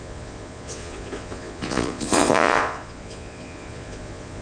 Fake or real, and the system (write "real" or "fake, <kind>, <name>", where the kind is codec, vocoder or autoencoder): fake, vocoder, Vocos